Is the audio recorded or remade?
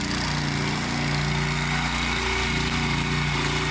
recorded